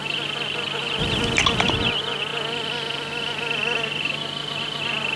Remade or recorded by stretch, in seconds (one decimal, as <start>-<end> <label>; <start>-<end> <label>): 0.0-5.2 recorded